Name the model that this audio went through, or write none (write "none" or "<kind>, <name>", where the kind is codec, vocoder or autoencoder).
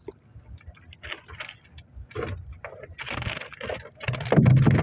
none